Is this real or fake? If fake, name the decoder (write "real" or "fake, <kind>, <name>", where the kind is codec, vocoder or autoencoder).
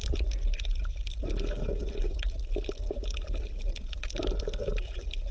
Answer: real